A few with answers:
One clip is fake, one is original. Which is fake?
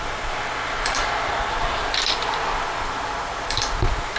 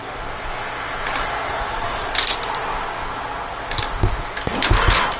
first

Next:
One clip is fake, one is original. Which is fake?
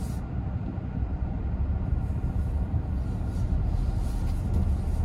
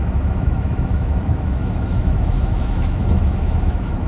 second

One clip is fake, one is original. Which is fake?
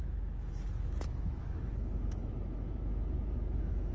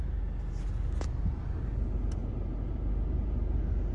first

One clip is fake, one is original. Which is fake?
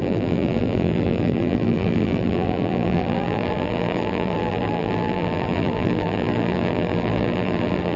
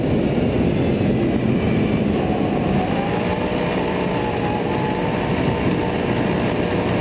first